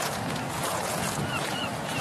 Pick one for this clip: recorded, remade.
remade